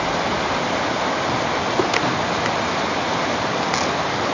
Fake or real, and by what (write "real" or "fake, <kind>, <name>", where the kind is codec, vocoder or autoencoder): real